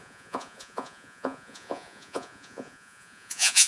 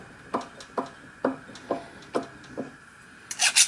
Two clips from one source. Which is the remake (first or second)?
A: first